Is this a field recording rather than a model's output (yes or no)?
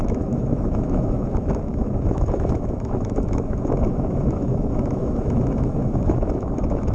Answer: no